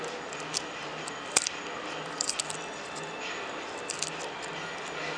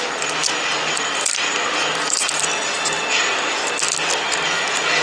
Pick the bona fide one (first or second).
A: second